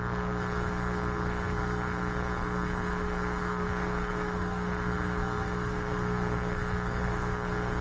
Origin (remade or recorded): remade